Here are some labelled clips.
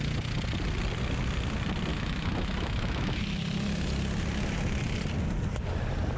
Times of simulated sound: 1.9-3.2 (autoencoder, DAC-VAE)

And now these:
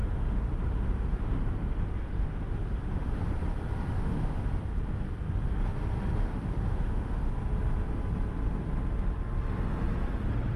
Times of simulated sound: 0.0-3.4 (autoencoder, DAC-VAE); 3.9-4.4; 6.3-7.3

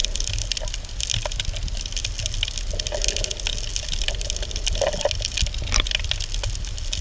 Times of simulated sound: none

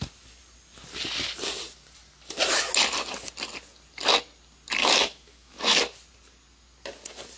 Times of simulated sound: 4.8-5.8 (autoencoder, DAC-VAE)

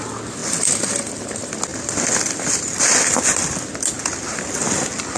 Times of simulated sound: none

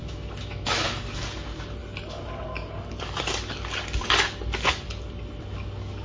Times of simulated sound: 0.0-1.2 (autoencoder, DAC-VAE)